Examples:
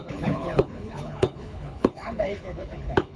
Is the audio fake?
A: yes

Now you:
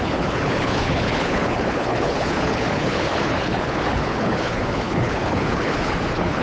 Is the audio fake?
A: yes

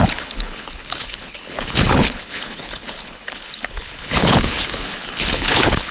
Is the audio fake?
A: yes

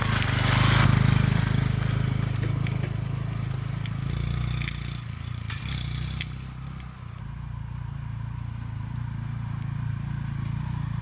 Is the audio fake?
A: no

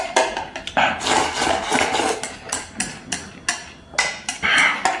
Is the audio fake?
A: no